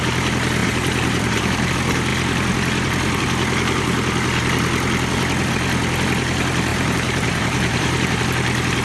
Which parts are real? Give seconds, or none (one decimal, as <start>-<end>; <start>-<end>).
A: 0.0-0.6; 1.7-6.7; 8.2-8.8